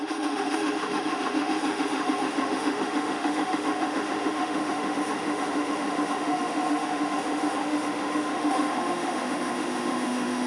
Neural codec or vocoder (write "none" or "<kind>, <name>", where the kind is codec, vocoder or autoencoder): autoencoder, DAC-VAE